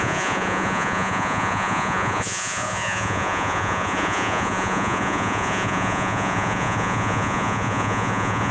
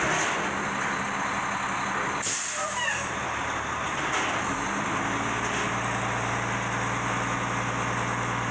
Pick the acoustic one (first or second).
second